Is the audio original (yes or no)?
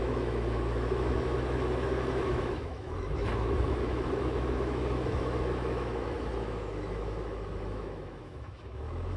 no